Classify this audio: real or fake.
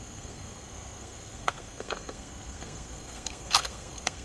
fake